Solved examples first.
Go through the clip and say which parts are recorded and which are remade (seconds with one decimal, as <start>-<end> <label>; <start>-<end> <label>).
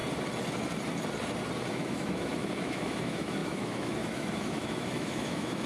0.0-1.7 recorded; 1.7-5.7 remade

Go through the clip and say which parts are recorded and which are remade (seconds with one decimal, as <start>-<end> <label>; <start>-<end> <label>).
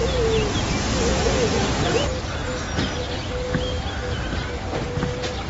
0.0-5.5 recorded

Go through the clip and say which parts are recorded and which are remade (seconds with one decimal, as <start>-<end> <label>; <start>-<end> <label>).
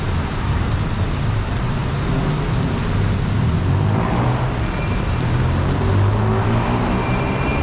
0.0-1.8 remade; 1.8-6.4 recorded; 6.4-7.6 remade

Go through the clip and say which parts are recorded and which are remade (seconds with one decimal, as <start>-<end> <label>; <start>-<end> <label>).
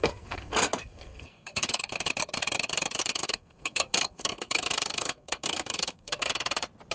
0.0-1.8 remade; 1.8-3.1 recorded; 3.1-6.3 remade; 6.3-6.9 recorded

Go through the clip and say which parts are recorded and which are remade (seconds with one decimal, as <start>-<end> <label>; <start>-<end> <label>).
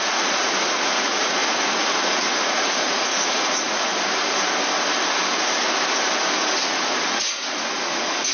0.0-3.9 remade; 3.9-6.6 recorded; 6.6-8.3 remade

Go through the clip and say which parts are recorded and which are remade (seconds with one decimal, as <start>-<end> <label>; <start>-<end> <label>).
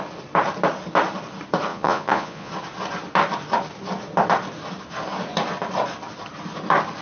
0.0-1.7 recorded; 1.7-2.5 remade; 2.5-7.0 recorded